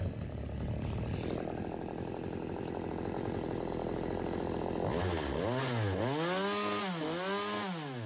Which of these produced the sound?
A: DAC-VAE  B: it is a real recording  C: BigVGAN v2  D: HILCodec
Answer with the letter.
B